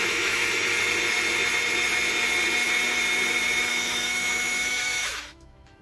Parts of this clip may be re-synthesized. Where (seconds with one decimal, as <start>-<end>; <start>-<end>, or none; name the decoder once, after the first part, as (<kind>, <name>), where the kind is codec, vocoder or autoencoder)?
0.0-0.4 (autoencoder, DAC-VAE); 3.7-5.8